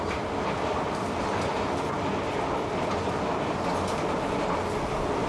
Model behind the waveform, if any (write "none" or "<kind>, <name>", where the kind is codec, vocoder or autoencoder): none